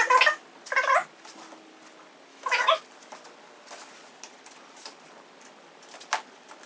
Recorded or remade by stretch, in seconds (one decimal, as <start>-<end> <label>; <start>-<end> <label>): 0.0-2.3 recorded; 2.3-2.8 remade; 2.8-6.7 recorded